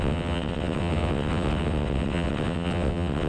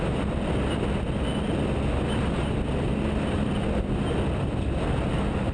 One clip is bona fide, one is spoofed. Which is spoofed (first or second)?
first